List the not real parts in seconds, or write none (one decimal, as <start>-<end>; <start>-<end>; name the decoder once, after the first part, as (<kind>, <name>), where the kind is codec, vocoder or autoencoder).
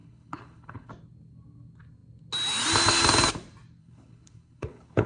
0.0-0.9 (codec, HILCodec); 3.8-5.1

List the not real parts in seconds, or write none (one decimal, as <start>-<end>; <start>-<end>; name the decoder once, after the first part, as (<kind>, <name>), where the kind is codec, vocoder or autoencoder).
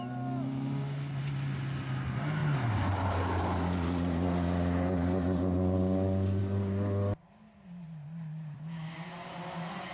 none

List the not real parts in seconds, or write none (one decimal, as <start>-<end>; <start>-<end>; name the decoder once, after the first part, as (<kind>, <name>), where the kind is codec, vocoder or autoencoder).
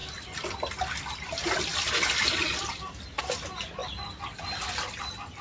none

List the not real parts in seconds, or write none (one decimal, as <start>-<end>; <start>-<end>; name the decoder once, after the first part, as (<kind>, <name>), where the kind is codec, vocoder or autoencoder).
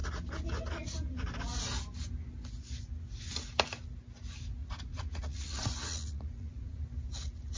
4.6-6.8 (vocoder, Vocos)